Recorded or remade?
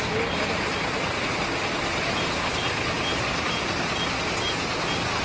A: recorded